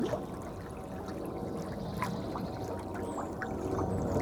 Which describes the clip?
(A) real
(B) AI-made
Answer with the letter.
A